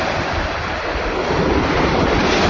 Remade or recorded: recorded